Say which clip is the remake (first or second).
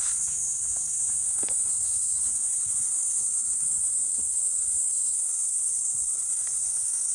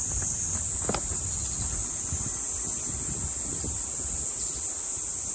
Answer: first